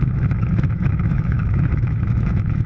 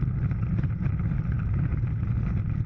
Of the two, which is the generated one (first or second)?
first